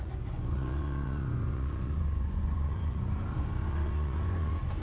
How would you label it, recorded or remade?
remade